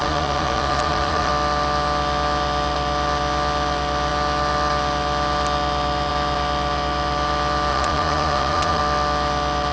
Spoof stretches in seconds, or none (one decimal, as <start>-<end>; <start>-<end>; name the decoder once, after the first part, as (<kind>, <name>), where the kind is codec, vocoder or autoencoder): 0.0-1.3 (vocoder, Vocos); 7.7-8.8